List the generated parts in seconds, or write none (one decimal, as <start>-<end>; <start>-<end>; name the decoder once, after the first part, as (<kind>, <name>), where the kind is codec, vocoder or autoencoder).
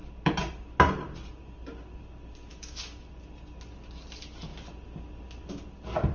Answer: 2.5-3.1 (autoencoder, DAC-VAE)